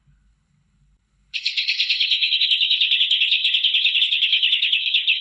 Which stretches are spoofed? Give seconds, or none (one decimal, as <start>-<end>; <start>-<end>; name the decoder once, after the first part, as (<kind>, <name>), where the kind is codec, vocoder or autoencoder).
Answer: 0.0-5.2 (codec, HILCodec)